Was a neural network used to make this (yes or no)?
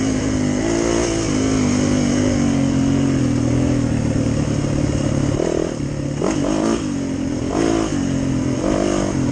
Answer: no